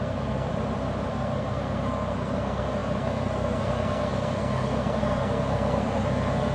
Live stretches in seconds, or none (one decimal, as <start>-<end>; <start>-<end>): 0.5-1.1